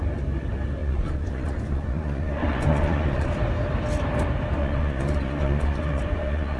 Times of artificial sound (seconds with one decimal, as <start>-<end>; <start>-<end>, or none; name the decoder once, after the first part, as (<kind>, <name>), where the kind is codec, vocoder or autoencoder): 0.8-3.3 (vocoder, Vocos); 4.6-6.6

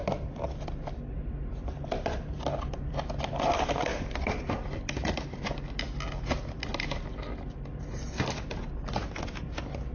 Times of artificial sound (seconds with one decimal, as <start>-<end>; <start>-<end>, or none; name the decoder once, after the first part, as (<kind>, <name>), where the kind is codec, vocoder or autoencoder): none

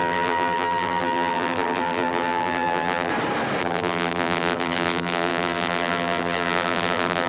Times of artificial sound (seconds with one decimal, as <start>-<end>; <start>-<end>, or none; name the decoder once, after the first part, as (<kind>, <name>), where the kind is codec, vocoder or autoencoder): 0.0-3.1 (vocoder, BigVGAN v2); 3.6-7.3

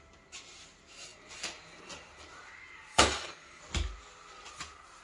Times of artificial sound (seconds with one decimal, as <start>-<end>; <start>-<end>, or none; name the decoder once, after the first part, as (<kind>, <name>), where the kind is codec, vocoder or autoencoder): 2.9-3.6 (codec, DAC)

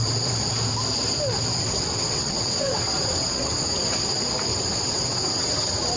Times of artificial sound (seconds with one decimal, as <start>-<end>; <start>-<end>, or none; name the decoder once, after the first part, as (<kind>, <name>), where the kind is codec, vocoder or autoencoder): 1.6-4.0 (vocoder, WaveNeXt); 4.5-6.0

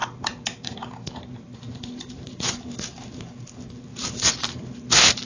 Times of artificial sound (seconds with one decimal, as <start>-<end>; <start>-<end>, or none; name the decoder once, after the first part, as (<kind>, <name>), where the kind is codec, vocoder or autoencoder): 0.0-3.2 (vocoder, BigVGAN v2); 3.9-5.3

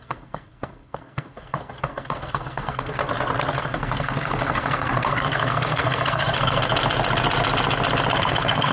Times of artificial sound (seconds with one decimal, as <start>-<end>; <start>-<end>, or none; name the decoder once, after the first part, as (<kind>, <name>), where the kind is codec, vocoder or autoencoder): 0.0-3.0 (codec, SNAC); 3.6-6.6; 8.2-8.7

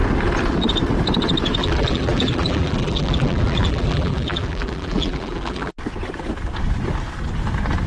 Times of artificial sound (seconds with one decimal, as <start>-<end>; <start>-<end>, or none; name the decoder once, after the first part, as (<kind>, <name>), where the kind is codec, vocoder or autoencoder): 1.6-5.7 (vocoder, BigVGAN v2)